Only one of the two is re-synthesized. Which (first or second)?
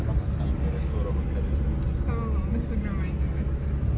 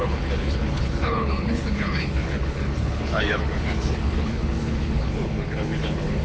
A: second